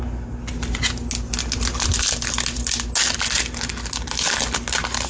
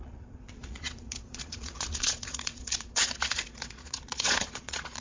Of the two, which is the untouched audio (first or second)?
first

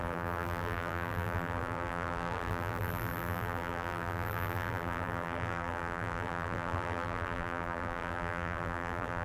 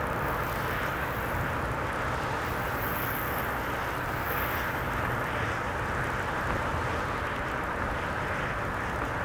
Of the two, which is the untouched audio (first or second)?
second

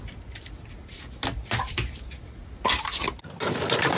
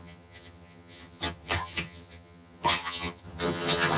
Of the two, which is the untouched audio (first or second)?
first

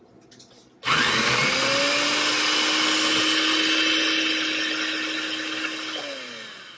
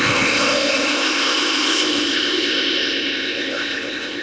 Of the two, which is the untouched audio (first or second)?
first